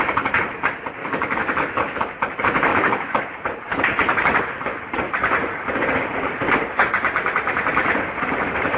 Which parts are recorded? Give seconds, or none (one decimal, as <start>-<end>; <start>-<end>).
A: 0.0-1.0; 2.0-2.7; 3.2-8.8